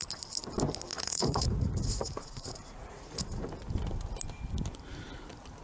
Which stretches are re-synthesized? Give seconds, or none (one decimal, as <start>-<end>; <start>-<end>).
0.9-3.5